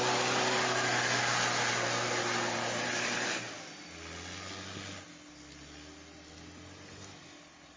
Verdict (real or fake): real